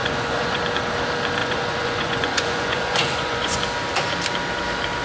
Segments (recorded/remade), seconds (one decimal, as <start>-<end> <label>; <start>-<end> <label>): 0.0-0.6 remade; 0.6-1.4 recorded; 1.4-3.6 remade; 3.6-5.0 recorded